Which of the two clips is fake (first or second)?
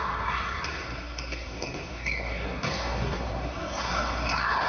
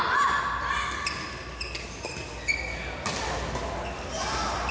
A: first